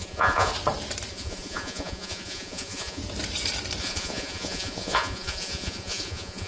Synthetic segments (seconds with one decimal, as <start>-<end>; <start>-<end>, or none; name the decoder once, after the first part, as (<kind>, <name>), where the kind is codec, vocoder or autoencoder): 0.0-0.5 (vocoder, Vocos); 1.1-3.0; 3.8-6.5